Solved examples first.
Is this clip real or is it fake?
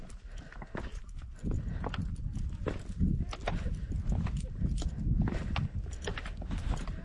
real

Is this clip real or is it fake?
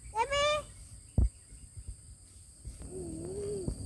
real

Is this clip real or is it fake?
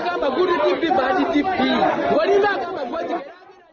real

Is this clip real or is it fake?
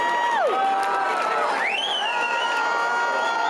real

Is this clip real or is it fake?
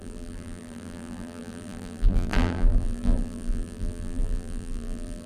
fake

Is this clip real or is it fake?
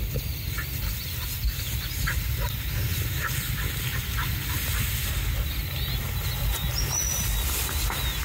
real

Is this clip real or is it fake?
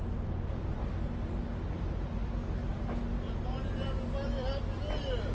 real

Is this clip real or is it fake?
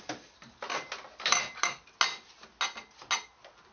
real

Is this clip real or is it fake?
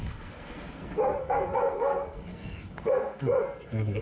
fake